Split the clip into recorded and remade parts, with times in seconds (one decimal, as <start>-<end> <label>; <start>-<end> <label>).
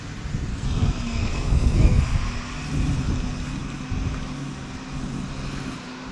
0.0-0.5 recorded; 0.5-2.0 remade; 2.0-6.1 recorded